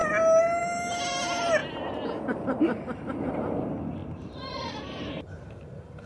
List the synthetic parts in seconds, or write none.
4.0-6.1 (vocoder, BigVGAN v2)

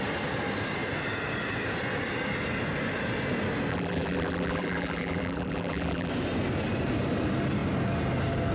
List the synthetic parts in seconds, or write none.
3.7-6.1 (vocoder, BigVGAN v2)

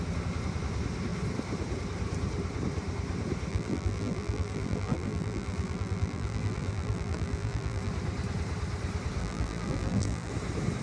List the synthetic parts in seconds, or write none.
3.5-7.9 (vocoder, BigVGAN v2); 9.2-10.3